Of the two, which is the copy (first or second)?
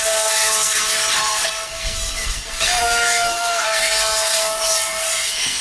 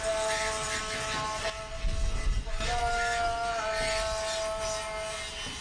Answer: first